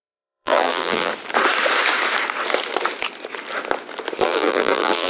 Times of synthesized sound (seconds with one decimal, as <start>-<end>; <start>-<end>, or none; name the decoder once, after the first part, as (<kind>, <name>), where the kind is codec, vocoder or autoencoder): 0.0-1.1 (vocoder, BigVGAN v2); 4.2-5.1